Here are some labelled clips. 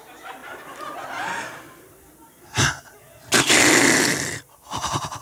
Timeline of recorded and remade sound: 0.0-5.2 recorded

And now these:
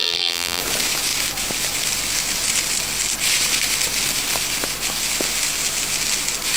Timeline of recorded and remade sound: 0.0-0.6 remade; 0.6-6.6 recorded

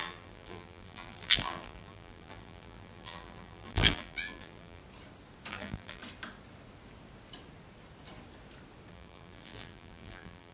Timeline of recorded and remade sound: 0.0-4.8 remade; 4.8-5.5 recorded; 5.5-6.0 remade; 6.0-8.9 recorded; 8.9-10.5 remade

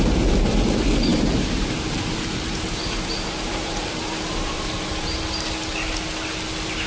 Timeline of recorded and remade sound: 0.0-1.1 recorded; 1.1-5.2 remade; 5.2-6.9 recorded